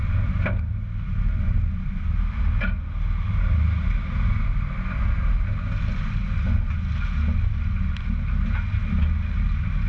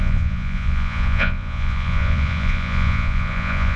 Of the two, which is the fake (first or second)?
second